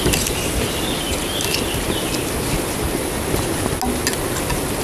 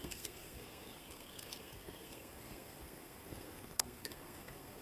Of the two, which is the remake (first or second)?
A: second